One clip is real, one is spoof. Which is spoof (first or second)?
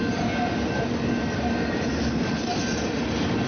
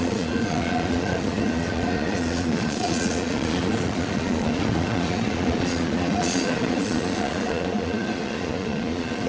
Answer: second